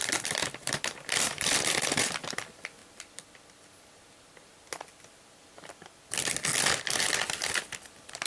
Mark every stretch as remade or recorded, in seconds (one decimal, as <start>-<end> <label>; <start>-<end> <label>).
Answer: 0.0-2.8 remade; 2.8-7.8 recorded; 7.8-8.3 remade